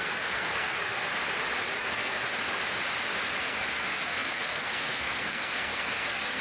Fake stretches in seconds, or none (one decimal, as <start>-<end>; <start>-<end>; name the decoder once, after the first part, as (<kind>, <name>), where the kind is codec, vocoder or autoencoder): 0.0-1.1 (codec, SNAC); 1.8-2.2; 3.4-6.4